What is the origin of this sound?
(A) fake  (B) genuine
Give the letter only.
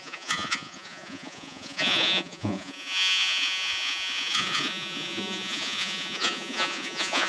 A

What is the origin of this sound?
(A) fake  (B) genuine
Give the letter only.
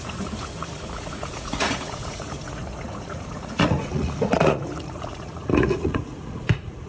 A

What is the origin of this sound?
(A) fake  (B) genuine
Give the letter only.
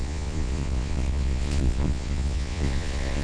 A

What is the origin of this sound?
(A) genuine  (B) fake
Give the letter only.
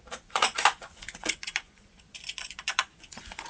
B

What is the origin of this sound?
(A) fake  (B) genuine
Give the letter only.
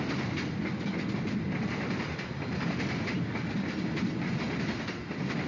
B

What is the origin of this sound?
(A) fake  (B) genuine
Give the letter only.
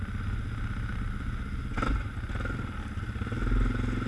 B